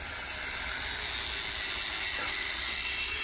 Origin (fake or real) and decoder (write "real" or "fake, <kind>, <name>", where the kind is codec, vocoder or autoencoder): real